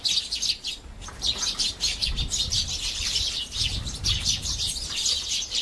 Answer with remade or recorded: remade